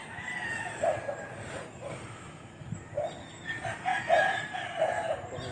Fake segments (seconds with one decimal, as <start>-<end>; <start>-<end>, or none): none